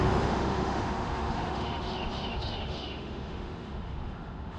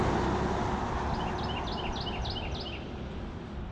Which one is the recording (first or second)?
second